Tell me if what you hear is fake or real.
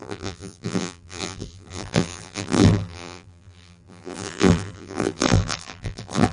fake